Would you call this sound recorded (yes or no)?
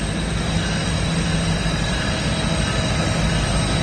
yes